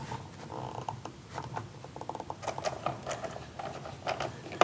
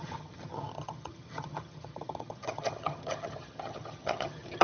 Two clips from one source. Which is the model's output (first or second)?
second